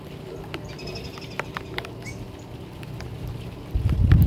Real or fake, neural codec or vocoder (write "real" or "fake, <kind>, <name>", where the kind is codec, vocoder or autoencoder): real